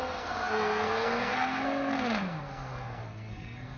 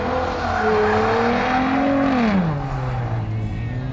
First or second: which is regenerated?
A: first